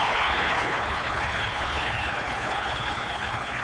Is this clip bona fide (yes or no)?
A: no